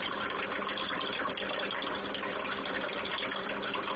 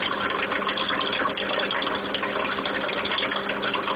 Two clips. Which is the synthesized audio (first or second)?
first